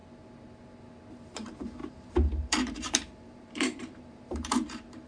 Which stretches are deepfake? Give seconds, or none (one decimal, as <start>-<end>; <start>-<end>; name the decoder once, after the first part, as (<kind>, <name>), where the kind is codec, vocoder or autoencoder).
1.1-5.1 (vocoder, BigVGAN v2)

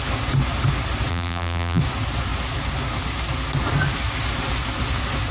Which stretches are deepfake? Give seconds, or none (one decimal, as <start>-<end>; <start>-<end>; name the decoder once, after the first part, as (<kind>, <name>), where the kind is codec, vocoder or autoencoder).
1.1-1.8 (vocoder, BigVGAN v2)

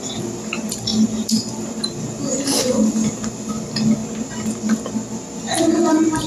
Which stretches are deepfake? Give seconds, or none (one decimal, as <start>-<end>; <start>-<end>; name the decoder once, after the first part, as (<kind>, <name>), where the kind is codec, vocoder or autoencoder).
none

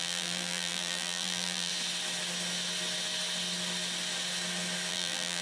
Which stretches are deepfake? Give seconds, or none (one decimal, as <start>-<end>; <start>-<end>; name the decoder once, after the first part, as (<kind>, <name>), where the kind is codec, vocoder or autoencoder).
0.0-1.7 (vocoder, BigVGAN v2); 4.9-5.4

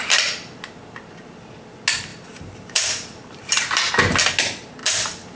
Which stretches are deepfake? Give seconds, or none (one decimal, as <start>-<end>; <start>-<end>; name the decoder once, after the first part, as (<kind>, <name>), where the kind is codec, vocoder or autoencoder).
2.1-3.9 (vocoder, BigVGAN v2); 4.8-5.4

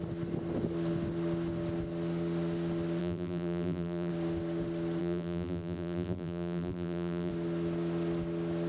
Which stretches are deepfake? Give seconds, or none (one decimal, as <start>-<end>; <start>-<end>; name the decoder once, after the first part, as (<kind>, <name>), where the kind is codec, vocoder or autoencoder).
3.0-4.1 (vocoder, BigVGAN v2); 5.0-7.3

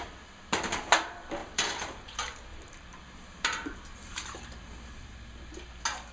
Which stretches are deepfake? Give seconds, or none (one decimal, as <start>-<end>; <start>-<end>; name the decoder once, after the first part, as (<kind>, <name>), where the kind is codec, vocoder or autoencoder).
1.4-5.1 (vocoder, BigVGAN v2)

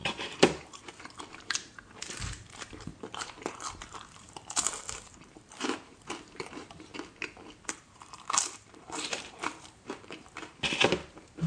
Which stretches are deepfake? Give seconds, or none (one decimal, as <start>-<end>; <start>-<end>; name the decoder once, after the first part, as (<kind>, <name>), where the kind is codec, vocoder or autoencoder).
0.0-6.9 (vocoder, BigVGAN v2); 7.6-10.5; 11.1-11.5